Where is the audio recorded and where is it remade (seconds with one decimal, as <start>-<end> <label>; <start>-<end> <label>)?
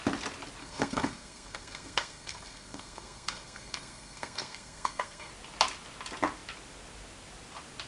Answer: 0.0-0.6 recorded; 0.6-5.3 remade; 5.3-7.9 recorded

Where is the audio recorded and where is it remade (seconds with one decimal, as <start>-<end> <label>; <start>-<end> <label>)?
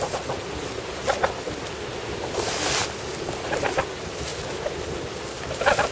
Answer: 0.0-5.9 recorded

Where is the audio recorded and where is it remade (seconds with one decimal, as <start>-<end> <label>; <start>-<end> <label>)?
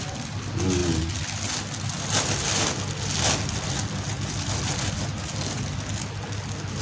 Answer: 0.0-6.8 recorded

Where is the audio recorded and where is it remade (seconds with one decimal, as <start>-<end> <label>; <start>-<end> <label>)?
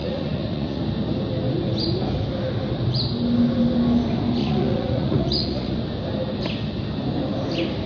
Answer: 0.0-0.8 remade; 0.8-4.4 recorded; 4.4-5.8 remade; 5.8-7.9 recorded